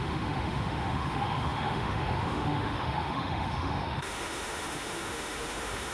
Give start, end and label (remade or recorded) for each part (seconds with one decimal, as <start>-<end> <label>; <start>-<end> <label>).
0.0-5.9 remade